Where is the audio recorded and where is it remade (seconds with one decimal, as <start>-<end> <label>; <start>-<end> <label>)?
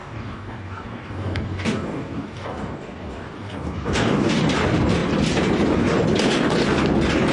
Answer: 0.0-4.4 remade; 4.4-7.3 recorded